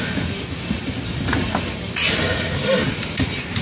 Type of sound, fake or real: real